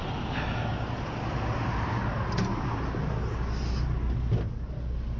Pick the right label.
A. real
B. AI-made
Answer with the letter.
A